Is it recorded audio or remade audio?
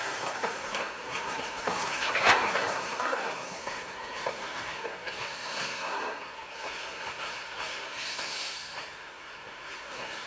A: remade